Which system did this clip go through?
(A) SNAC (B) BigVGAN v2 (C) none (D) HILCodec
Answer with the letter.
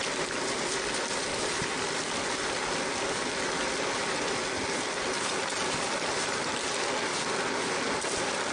C